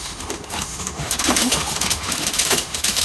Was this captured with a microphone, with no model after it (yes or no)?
no